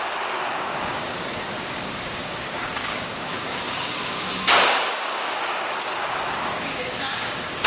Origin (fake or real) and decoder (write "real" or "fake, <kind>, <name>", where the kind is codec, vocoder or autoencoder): fake, codec, DAC